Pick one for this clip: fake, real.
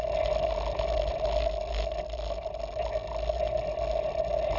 real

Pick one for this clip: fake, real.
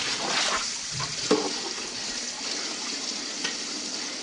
real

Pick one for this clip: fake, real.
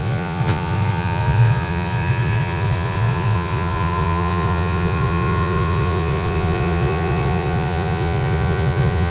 fake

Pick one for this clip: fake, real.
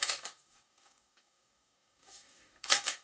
fake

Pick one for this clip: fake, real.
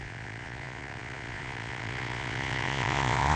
fake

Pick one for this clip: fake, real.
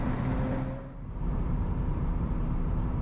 fake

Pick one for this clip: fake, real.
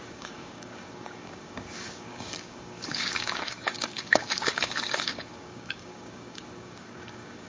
fake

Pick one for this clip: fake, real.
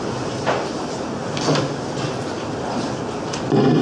real